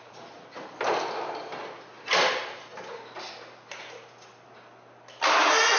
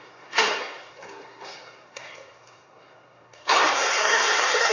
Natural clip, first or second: first